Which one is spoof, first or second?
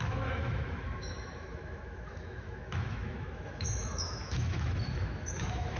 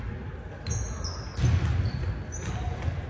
first